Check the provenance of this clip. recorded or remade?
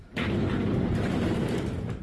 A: recorded